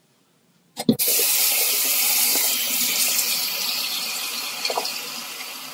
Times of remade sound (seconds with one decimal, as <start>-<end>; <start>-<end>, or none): 0.0-1.0; 2.3-4.6